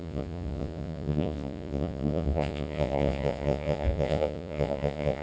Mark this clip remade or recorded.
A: remade